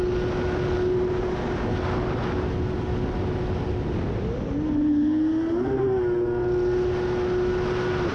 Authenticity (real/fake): real